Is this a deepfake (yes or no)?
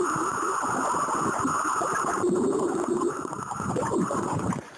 yes